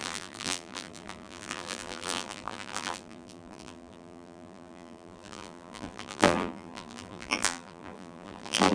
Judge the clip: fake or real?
fake